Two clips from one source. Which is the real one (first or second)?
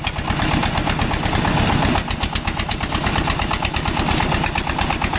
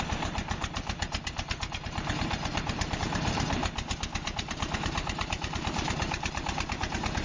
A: first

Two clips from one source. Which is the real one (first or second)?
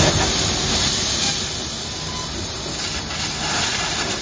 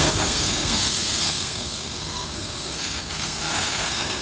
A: first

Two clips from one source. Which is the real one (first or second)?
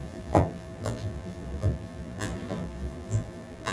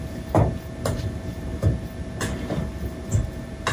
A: second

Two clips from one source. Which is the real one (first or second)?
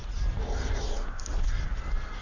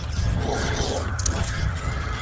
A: first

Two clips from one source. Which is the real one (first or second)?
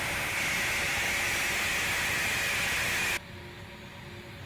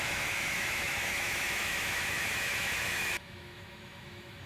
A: first